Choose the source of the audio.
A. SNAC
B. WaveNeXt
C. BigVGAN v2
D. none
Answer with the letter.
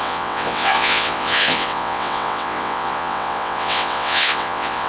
B